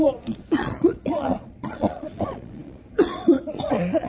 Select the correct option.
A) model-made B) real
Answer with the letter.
A